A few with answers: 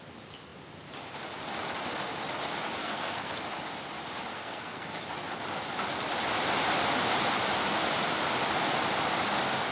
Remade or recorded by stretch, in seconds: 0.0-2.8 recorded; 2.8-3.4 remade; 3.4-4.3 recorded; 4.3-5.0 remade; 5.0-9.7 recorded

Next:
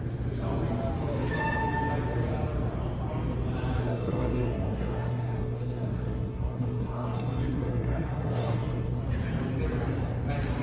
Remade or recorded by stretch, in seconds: 0.0-3.8 recorded; 3.8-9.0 remade; 9.0-10.6 recorded

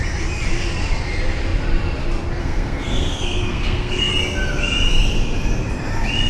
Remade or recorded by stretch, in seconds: 0.0-2.4 recorded; 2.4-4.1 remade; 4.1-6.3 recorded

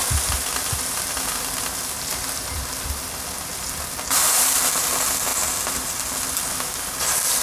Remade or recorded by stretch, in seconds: 0.0-7.4 recorded

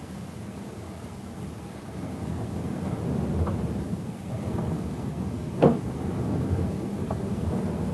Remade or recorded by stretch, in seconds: 0.0-3.0 remade; 3.0-3.8 recorded; 3.8-7.9 remade

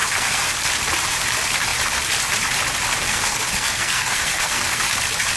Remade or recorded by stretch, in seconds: 0.0-0.5 remade; 0.5-3.0 recorded; 3.0-4.9 remade; 4.9-5.4 recorded

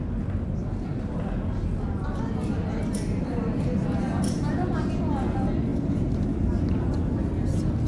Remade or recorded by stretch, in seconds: 0.0-7.9 recorded

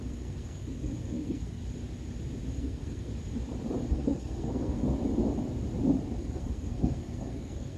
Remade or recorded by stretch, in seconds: 0.0-1.6 remade; 1.6-2.6 recorded; 2.6-3.1 remade; 3.1-3.9 recorded; 3.9-4.8 remade; 4.8-6.2 recorded; 6.2-7.8 remade